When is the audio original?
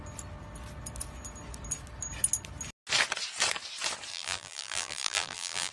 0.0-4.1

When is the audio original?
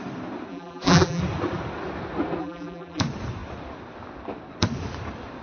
0.0-0.5; 1.2-2.4; 3.0-5.4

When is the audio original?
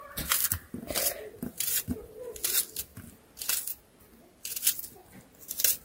1.9-2.9; 4.2-5.8